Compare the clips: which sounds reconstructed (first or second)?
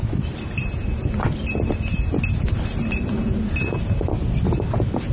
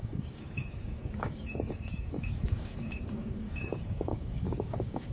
second